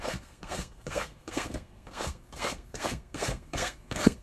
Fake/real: fake